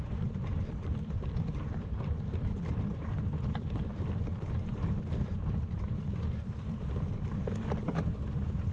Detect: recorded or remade remade